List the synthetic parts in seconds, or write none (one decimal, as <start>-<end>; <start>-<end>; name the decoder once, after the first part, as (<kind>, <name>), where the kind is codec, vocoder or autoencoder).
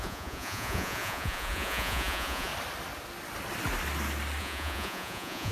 0.0-2.5 (vocoder, Vocos); 4.4-5.5